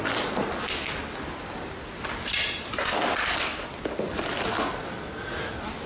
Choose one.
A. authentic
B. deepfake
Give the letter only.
A